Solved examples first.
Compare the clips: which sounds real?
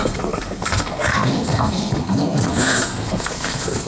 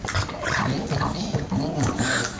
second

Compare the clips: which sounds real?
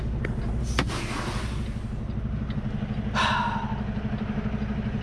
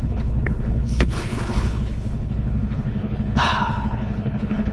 first